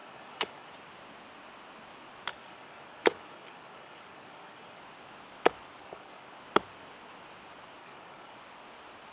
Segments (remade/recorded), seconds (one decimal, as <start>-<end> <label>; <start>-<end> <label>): 0.0-0.7 remade; 0.7-2.3 recorded; 2.3-4.8 remade; 4.8-5.8 recorded; 5.8-6.4 remade; 6.4-7.8 recorded; 7.8-8.4 remade; 8.4-9.1 recorded